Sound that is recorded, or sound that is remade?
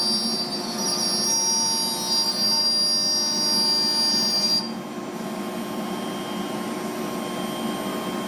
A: recorded